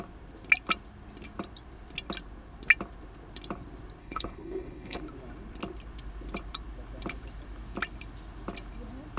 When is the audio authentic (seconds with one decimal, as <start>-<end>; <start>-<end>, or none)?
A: 0.0-4.0; 5.0-9.2